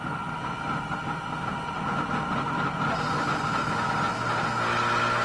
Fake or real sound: real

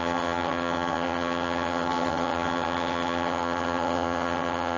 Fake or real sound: fake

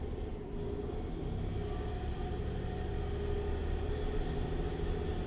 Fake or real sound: real